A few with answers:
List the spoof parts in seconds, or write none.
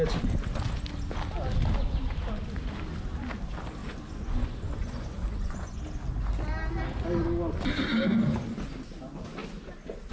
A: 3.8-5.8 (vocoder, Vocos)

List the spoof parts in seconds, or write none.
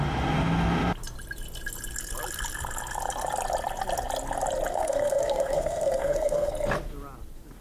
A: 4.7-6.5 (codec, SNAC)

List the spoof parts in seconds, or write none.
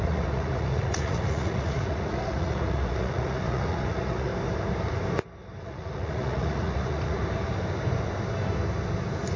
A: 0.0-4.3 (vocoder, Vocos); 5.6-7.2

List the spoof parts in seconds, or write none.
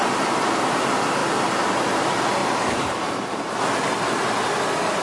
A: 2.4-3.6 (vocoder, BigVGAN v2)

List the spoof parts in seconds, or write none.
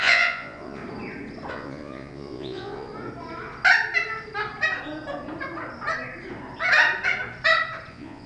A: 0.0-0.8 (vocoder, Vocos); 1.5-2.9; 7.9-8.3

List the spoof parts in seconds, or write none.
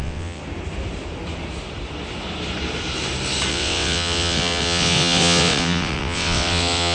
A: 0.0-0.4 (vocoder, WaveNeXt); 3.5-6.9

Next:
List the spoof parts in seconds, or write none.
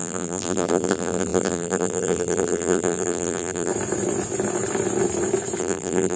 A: 0.0-3.7 (vocoder, BigVGAN v2); 5.6-6.2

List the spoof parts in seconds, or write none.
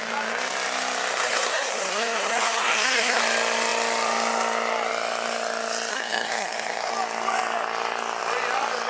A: 1.1-3.2 (codec, SNAC); 5.9-6.9